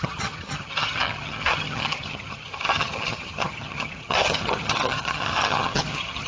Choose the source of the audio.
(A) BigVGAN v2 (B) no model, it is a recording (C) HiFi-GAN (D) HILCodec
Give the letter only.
C